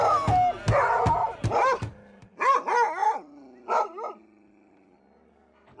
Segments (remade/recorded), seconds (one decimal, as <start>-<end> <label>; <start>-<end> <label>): 0.0-5.8 recorded